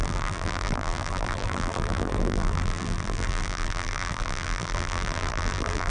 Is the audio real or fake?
fake